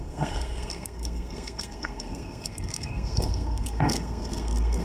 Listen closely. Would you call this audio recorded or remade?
remade